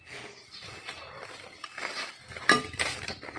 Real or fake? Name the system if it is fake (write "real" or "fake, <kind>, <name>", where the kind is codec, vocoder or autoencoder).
fake, vocoder, BigVGAN v2